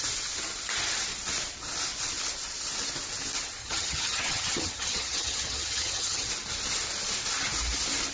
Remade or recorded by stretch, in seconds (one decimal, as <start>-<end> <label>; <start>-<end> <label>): 0.0-3.6 recorded; 3.6-6.3 remade; 6.3-8.1 recorded